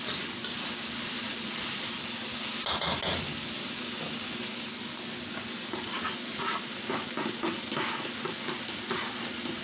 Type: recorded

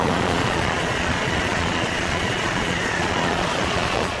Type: remade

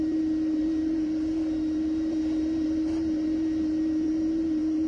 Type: remade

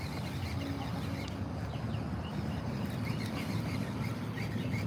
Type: recorded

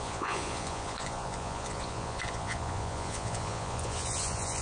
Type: remade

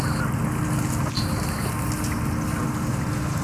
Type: recorded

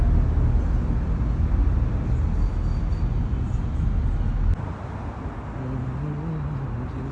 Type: recorded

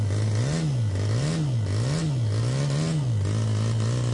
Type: recorded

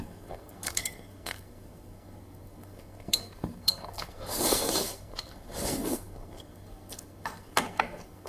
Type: remade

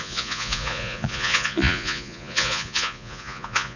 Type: remade